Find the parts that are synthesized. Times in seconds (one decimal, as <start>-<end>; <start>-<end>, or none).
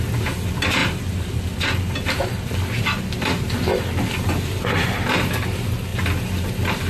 none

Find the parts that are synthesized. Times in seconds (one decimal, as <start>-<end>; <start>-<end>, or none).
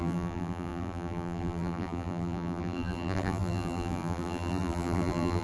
0.0-5.4